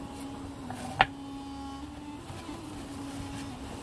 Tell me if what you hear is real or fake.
real